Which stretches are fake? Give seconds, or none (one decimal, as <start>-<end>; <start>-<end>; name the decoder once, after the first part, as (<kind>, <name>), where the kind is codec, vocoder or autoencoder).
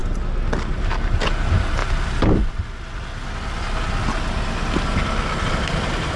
0.7-1.8 (vocoder, BigVGAN v2); 5.5-6.2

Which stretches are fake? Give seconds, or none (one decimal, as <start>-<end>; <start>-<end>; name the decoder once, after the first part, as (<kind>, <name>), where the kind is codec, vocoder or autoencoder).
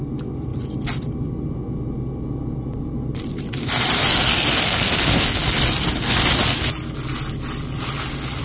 none